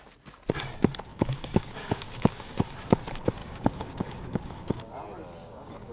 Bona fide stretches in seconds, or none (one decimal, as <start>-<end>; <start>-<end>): 0.0-1.1; 2.7-3.4; 4.9-5.4